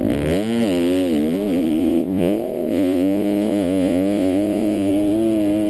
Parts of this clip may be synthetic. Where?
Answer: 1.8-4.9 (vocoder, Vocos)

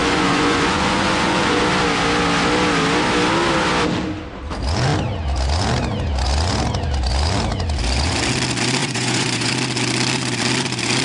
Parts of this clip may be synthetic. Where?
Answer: 0.0-1.6 (vocoder, Vocos); 8.8-9.5